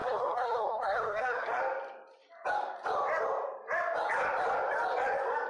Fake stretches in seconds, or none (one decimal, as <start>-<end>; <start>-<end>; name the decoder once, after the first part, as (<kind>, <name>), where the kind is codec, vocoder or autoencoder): 0.0-1.6 (codec, SNAC)